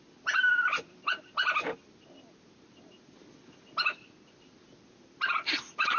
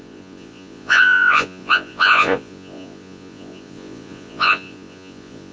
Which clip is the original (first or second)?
first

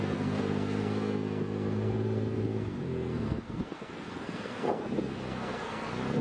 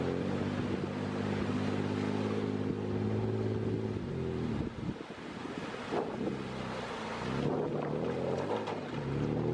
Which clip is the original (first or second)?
second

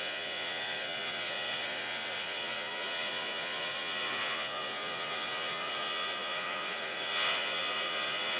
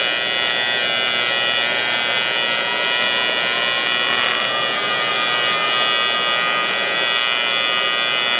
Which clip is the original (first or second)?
second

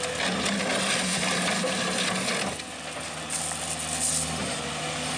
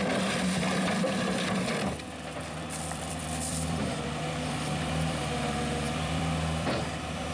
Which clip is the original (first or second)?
first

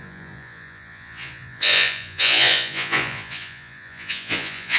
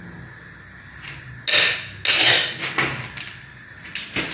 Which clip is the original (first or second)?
second